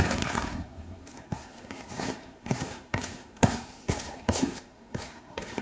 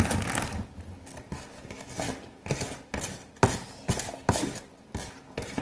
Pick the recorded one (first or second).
second